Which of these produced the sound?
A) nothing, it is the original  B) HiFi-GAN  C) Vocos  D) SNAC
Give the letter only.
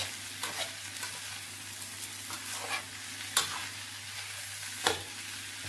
A